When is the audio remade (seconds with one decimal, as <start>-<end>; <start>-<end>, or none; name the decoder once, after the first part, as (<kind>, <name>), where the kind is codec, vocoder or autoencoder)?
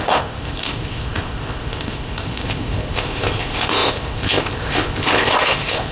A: 0.0-5.9 (codec, ZipCodec)